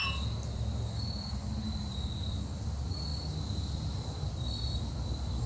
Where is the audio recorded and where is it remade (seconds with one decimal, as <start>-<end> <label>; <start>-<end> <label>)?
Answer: 0.0-5.5 recorded